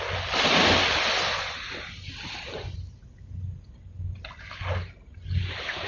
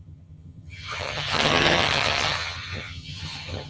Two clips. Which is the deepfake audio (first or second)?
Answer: second